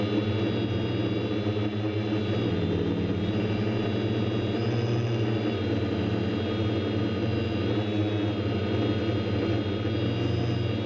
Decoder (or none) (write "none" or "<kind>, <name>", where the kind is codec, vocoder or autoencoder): none